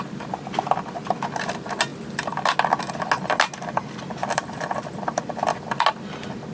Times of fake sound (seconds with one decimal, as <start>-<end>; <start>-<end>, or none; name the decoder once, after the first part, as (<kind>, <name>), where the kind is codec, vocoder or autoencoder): 4.2-5.2 (vocoder, BigVGAN v2)